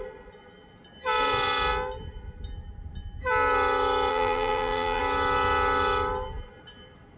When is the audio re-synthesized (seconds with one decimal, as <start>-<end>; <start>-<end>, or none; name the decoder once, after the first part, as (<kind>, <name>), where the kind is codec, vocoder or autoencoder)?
4.1-5.0 (vocoder, BigVGAN v2)